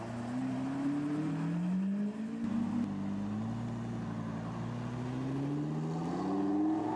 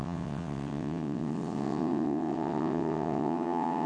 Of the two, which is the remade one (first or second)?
second